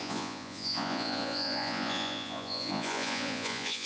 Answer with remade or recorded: remade